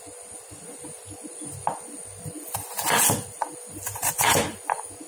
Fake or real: real